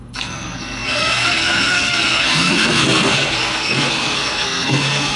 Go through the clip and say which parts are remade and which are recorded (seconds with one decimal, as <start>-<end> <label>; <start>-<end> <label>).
0.0-5.2 remade